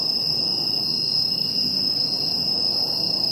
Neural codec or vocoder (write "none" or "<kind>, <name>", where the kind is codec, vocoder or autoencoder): none